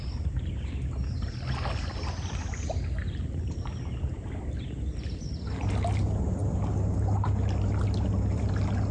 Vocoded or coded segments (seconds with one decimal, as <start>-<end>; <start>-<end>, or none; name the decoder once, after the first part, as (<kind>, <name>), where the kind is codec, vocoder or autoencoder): none